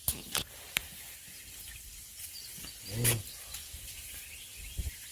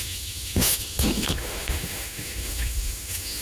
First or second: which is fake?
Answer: second